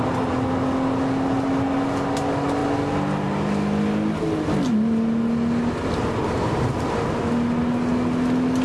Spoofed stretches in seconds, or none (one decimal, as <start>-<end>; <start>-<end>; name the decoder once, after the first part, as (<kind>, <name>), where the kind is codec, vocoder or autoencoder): none